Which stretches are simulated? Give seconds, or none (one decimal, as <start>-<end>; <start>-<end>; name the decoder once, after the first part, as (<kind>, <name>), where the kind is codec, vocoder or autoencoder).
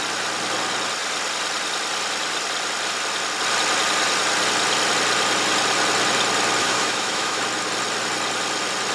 6.6-7.4 (autoencoder, DAC-VAE)